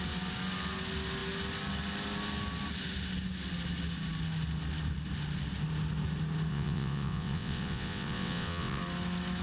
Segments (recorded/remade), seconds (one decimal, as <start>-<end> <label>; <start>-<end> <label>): 0.0-6.5 recorded; 6.5-8.8 remade; 8.8-9.4 recorded